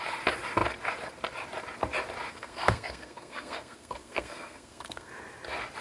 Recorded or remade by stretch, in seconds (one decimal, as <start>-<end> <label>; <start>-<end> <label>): 0.0-2.3 recorded; 2.3-5.1 remade; 5.1-5.8 recorded